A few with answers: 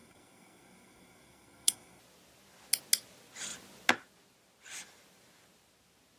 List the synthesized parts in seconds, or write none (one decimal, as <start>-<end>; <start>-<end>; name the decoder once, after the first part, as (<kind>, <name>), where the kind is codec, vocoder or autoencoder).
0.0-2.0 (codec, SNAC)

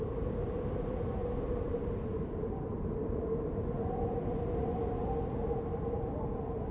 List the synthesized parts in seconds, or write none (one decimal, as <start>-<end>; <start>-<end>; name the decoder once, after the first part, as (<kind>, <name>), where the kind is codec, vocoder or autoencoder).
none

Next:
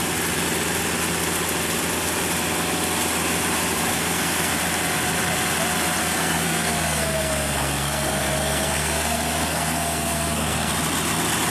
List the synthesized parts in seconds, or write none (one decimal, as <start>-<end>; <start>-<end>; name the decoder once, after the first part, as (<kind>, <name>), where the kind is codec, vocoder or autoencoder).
3.9-4.6 (codec, SNAC); 6.0-10.7

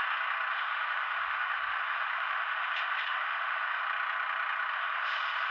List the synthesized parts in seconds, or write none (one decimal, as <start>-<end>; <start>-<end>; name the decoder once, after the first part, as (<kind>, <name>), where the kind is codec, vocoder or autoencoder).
0.5-3.8 (autoencoder, DAC-VAE); 4.7-5.5